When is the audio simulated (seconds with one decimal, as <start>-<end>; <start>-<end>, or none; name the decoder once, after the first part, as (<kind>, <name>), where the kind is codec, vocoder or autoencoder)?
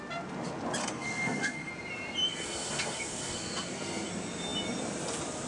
0.8-1.7 (codec, SNAC); 2.3-4.1